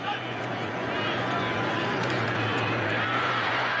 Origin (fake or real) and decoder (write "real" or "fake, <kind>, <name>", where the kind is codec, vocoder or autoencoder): fake, vocoder, Vocos